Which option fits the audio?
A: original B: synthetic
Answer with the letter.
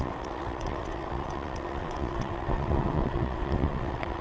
B